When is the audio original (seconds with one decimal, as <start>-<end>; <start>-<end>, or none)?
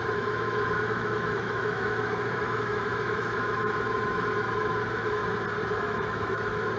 5.2-5.8